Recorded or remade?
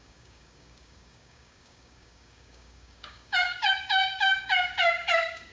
remade